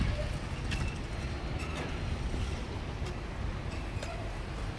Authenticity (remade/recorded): recorded